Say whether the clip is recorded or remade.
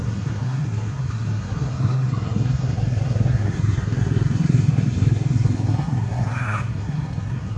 remade